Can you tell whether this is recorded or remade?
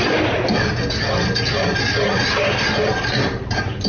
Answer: recorded